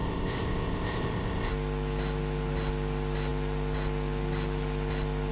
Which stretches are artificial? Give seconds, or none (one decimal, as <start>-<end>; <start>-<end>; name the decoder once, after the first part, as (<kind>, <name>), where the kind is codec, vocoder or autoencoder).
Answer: 0.0-1.5 (codec, ZipCodec)